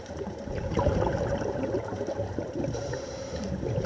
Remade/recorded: remade